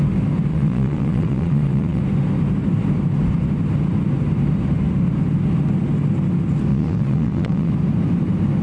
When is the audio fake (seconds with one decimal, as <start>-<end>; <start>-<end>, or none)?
0.5-2.0; 6.7-7.7